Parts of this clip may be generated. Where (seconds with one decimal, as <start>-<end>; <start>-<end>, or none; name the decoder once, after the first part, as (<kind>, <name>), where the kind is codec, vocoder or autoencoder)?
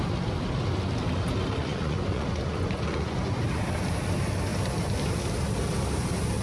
1.6-3.4 (vocoder, Vocos)